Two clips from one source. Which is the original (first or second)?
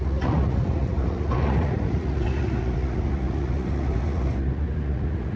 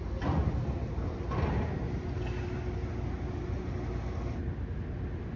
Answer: second